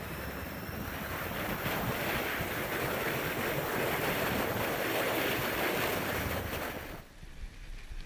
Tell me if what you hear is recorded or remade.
recorded